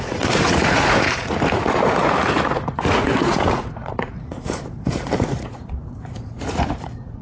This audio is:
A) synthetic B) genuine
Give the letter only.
A